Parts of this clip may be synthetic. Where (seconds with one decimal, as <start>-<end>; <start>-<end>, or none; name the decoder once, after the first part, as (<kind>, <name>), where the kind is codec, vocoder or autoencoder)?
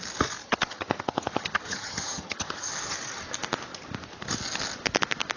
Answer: 0.4-2.7 (vocoder, HiFi-GAN)